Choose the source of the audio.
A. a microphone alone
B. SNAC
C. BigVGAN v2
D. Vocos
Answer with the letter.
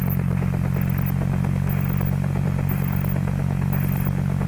A